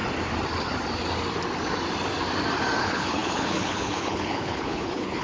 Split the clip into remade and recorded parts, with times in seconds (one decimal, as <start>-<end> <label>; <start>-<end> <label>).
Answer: 0.0-2.8 recorded; 2.8-5.2 remade